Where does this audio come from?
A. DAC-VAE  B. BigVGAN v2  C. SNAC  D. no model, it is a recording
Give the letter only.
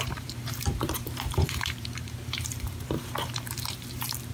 B